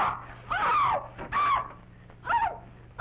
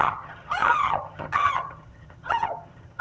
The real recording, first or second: first